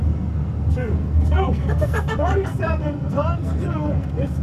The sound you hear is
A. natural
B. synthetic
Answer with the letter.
B